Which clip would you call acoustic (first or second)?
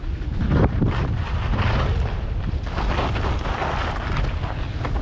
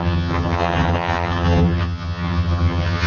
first